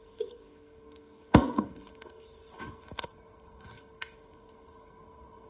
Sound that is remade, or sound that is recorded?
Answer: remade